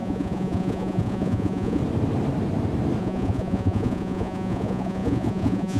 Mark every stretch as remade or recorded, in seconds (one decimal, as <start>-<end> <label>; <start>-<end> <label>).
0.0-1.8 remade; 1.8-3.0 recorded; 3.0-5.8 remade